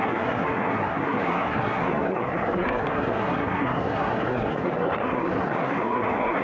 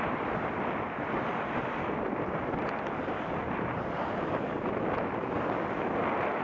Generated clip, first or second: first